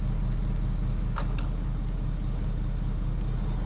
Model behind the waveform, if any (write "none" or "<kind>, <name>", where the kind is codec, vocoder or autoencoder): none